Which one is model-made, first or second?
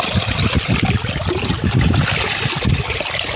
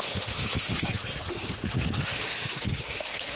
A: second